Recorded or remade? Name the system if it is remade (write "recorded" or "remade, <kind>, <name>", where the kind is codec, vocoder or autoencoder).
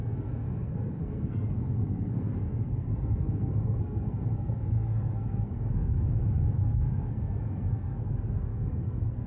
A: remade, codec, SNAC